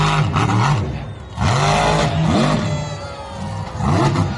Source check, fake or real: real